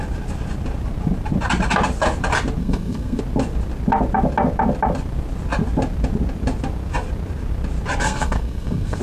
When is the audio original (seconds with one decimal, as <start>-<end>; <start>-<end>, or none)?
0.0-2.6; 3.2-8.0